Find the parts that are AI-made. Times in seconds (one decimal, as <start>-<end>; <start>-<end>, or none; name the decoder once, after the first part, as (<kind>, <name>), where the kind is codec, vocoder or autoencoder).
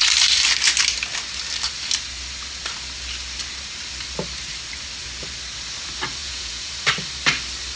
6.2-6.7 (vocoder, Vocos)